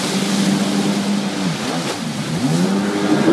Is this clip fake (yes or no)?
no